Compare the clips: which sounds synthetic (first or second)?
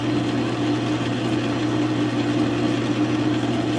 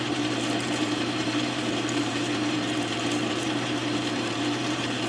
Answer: second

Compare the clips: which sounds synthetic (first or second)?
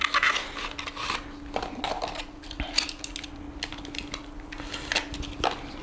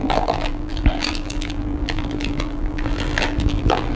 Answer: second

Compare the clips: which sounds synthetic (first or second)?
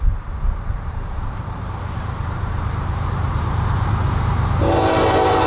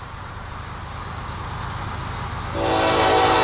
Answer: first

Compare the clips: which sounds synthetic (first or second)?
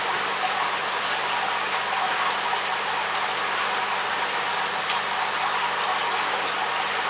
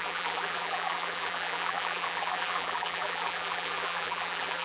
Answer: second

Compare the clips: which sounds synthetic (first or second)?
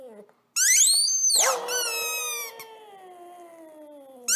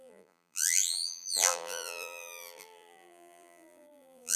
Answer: second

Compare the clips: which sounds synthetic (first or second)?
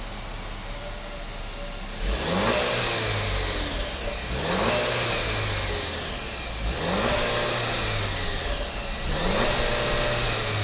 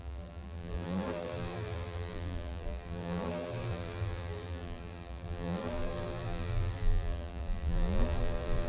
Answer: second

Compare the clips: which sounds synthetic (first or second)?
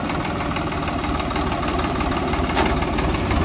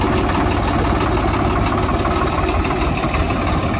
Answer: first